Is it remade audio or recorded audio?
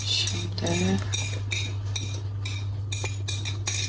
recorded